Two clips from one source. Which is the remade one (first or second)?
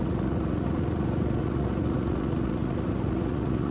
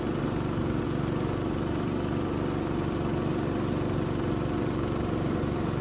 first